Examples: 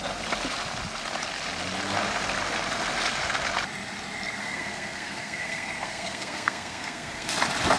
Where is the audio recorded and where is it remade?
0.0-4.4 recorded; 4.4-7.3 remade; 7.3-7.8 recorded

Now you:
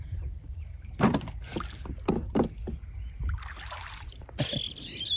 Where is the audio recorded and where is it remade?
0.0-5.2 recorded

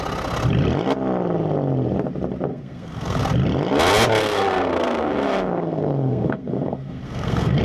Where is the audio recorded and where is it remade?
0.0-2.5 recorded; 2.5-3.2 remade; 3.2-4.2 recorded; 4.2-7.6 remade

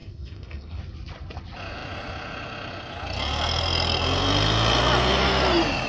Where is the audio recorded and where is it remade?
0.0-0.8 remade; 0.8-5.9 recorded